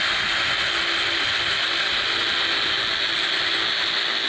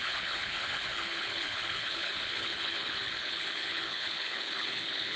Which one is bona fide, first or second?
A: first